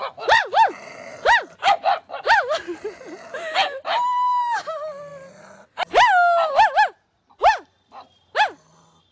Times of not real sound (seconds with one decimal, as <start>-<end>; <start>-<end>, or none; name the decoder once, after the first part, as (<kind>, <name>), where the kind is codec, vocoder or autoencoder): none